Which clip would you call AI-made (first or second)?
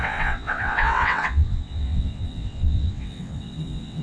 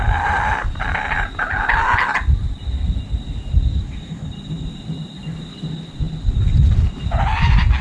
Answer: first